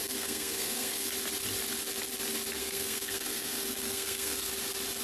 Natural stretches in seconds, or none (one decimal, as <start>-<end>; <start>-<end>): 1.1-2.6; 4.5-5.0